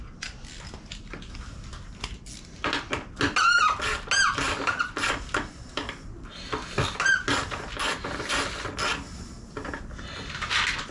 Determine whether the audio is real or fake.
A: real